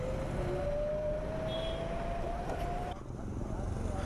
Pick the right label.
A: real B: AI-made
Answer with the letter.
A